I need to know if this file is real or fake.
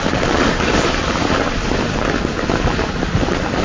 real